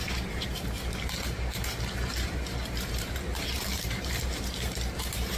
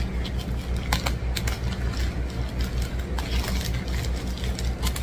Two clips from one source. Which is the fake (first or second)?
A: first